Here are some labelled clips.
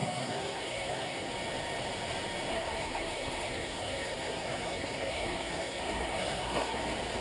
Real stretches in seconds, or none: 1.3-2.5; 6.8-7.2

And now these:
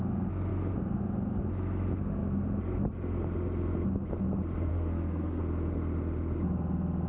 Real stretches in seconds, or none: 0.0-4.7; 5.4-7.1

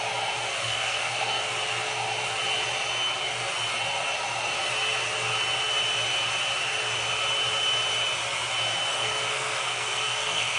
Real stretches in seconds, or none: 0.0-0.6; 1.4-8.9

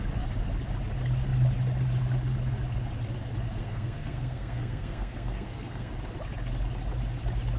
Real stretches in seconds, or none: 0.0-3.6; 5.9-7.6

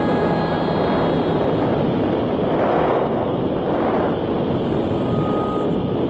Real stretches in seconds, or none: 0.0-2.7; 3.4-6.1

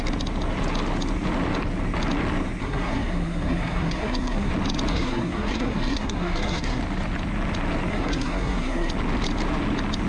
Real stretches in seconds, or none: 0.0-2.6; 4.5-4.9; 6.8-7.9; 8.9-10.1

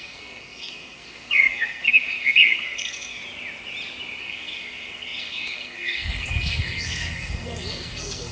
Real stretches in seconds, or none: 3.2-4.2